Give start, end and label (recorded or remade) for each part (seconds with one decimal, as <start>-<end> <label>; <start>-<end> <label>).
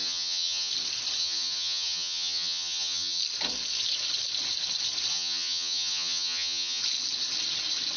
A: 0.0-0.7 remade; 0.7-1.2 recorded; 1.2-3.2 remade; 3.2-5.1 recorded; 5.1-6.8 remade; 6.8-8.0 recorded